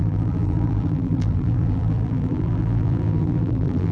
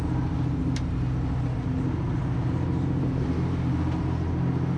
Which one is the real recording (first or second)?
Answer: second